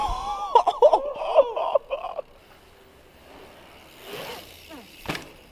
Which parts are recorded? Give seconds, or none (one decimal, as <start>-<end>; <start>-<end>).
0.0-4.3